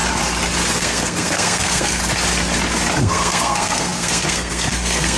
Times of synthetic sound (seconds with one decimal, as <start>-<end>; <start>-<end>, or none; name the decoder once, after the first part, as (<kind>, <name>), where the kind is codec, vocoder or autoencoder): 0.7-2.0 (codec, SNAC); 3.0-5.2